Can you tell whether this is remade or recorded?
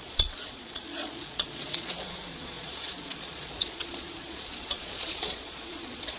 remade